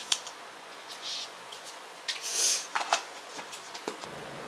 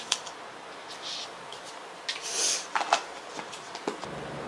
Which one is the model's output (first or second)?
first